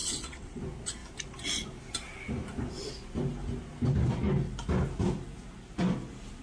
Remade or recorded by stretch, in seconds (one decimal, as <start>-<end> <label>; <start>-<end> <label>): 0.0-0.6 remade; 0.6-6.4 recorded